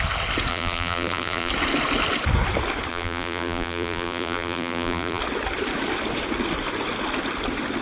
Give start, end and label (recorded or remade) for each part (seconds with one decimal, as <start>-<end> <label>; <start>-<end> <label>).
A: 0.0-0.5 recorded; 0.5-1.5 remade; 1.5-2.9 recorded; 2.9-5.2 remade; 5.2-7.8 recorded